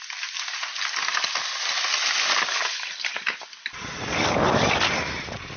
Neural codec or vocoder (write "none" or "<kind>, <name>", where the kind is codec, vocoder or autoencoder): none